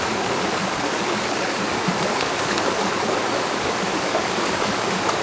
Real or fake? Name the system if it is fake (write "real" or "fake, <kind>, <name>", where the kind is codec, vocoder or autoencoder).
fake, codec, DAC